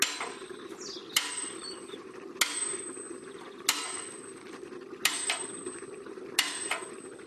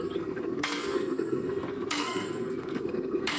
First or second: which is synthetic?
second